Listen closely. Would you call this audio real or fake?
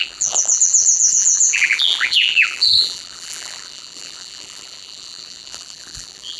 fake